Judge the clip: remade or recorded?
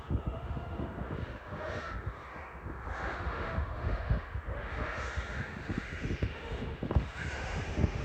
remade